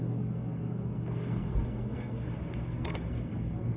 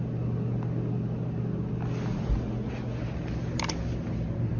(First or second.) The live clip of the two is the second